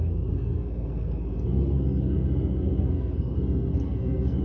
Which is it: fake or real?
fake